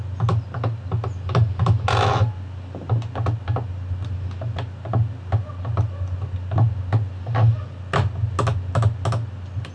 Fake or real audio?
real